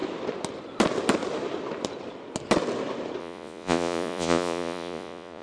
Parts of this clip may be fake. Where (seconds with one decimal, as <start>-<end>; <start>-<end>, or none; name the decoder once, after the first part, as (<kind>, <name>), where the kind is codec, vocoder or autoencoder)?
3.2-5.4 (vocoder, Vocos)